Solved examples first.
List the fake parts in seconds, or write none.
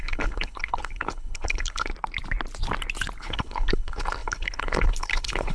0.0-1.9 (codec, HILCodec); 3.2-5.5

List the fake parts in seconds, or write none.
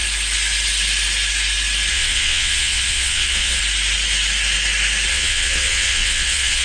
1.9-3.6 (vocoder, WaveNeXt); 5.1-6.6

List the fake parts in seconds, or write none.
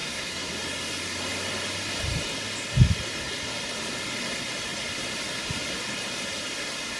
0.0-0.5 (codec, SNAC)